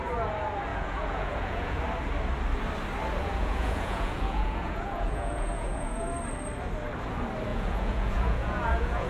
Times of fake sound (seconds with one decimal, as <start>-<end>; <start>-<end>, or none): 0.7-1.8; 3.2-6.1; 7.5-9.1